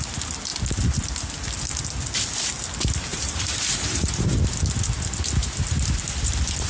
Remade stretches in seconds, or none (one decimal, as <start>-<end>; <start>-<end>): 3.1-4.5; 5.4-6.7